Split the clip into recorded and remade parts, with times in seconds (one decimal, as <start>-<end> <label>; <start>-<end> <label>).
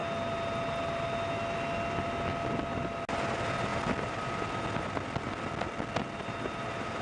0.0-7.0 recorded